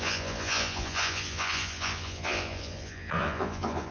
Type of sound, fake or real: fake